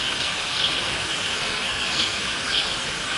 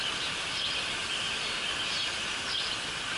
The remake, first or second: first